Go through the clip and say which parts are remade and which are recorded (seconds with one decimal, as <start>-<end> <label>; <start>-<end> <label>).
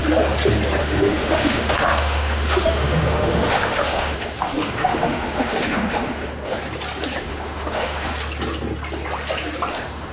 0.0-0.8 recorded; 0.8-6.6 remade; 6.6-7.2 recorded; 7.2-8.1 remade; 8.1-9.7 recorded; 9.7-10.1 remade